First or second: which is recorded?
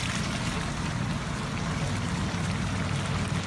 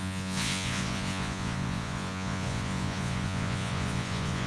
first